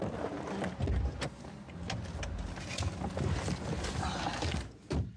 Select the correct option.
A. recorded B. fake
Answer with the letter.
A